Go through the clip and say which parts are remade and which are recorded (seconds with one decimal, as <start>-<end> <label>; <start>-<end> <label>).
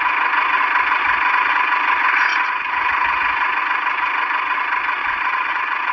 0.0-5.0 recorded; 5.0-5.9 remade